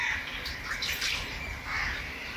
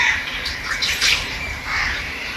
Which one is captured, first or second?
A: first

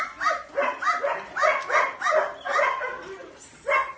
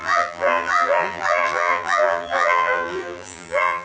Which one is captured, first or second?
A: first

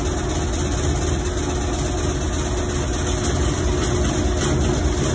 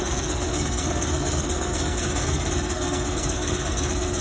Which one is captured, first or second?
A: first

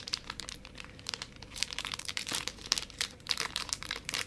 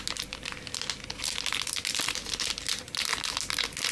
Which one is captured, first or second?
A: second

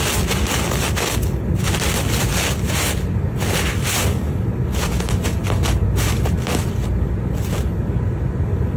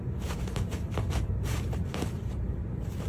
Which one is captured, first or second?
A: first